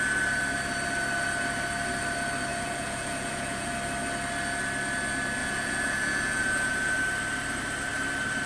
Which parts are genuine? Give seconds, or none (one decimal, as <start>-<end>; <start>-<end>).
0.0-2.5; 3.7-5.4; 6.9-8.5